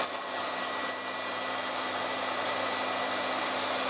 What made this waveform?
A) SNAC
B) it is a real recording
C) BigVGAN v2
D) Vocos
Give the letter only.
B